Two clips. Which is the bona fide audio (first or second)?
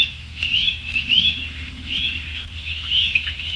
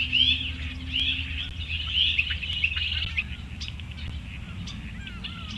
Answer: second